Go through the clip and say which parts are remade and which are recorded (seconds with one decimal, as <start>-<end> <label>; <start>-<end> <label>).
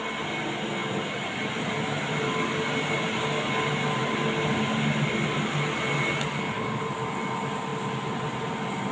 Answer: 0.0-8.9 recorded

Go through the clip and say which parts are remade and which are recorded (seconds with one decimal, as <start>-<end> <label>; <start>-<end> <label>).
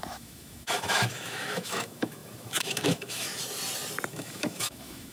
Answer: 0.0-3.3 remade; 3.3-4.1 recorded; 4.1-5.1 remade